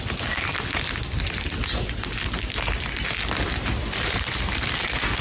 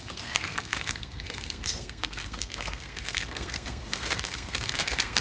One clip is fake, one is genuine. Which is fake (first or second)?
second